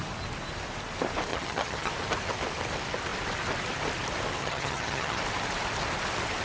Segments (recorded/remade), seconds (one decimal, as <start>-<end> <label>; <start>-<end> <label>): 0.0-1.3 recorded; 1.3-1.9 remade; 1.9-4.4 recorded; 4.4-5.2 remade; 5.2-6.4 recorded